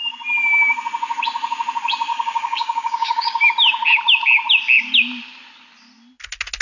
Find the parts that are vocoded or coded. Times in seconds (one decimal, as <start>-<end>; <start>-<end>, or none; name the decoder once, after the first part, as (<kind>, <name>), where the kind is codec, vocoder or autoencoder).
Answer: 2.1-3.5 (codec, DAC)